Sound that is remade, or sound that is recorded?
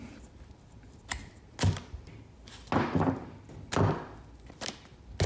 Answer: recorded